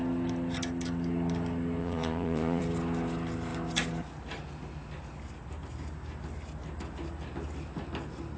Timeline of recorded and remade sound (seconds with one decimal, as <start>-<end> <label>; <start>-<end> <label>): 0.0-1.8 recorded; 1.8-2.6 remade; 2.6-8.4 recorded